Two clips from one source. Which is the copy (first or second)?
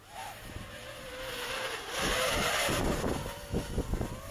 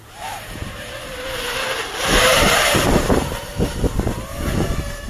second